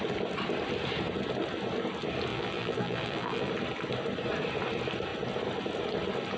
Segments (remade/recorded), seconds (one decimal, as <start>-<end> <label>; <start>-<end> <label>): 0.0-2.3 recorded; 2.3-3.5 remade; 3.5-6.4 recorded